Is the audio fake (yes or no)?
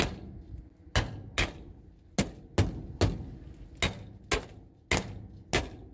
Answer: no